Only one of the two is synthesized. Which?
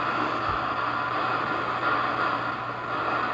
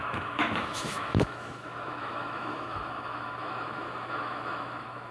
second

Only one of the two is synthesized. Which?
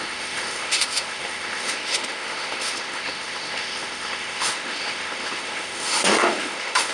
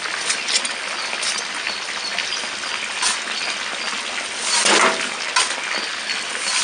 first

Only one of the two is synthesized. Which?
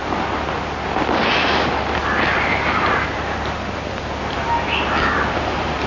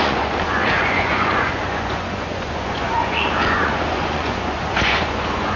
second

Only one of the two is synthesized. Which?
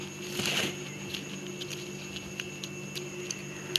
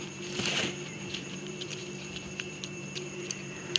second